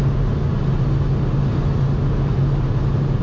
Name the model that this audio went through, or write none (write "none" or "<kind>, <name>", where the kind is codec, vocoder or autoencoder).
none